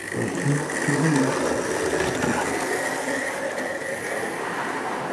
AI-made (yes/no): no